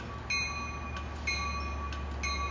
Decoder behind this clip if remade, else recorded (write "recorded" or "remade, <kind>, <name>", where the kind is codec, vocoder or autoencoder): recorded